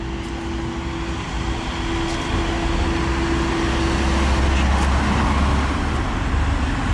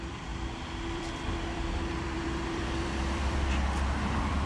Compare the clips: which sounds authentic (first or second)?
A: first